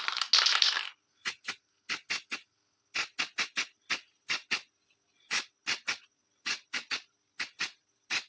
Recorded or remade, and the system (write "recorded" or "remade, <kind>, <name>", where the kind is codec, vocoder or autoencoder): recorded